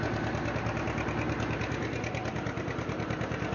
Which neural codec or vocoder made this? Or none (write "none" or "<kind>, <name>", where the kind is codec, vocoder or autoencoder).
none